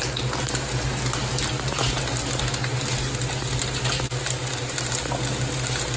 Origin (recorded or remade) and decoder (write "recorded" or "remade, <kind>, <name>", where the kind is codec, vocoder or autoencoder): recorded